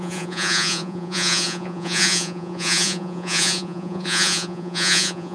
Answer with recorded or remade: remade